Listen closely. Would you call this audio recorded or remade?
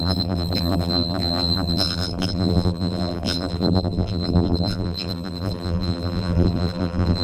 remade